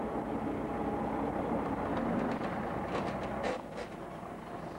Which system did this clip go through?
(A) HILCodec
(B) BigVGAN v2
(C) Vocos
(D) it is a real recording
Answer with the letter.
D